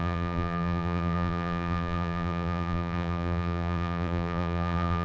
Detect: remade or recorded remade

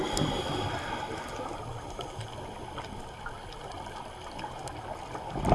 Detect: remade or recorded recorded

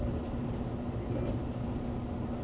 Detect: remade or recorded recorded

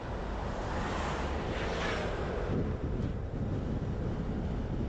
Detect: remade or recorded recorded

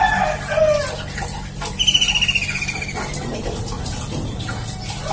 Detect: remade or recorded recorded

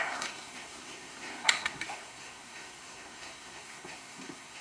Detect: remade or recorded remade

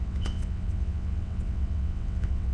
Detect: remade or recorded remade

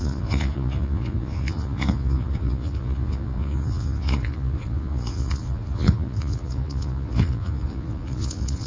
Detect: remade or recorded remade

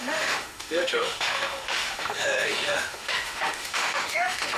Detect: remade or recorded remade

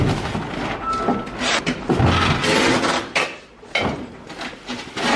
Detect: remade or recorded recorded